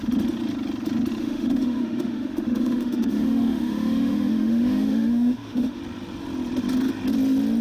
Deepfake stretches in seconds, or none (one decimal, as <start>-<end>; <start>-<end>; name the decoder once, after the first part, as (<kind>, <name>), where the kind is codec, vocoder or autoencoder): 1.2-5.8 (autoencoder, DAC-VAE)